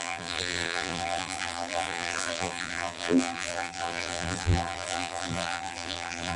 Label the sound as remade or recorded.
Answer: remade